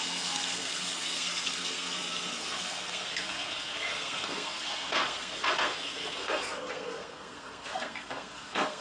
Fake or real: fake